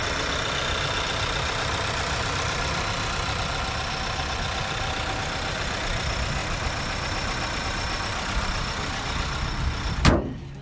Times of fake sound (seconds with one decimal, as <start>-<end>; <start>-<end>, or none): none